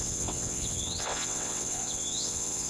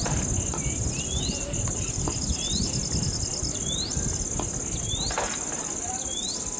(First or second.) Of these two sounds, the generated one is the first